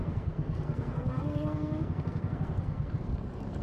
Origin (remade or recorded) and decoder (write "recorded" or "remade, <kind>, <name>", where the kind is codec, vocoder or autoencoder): remade, codec, SNAC